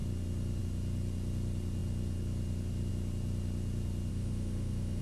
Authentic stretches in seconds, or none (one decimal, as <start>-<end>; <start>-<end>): 0.0-4.1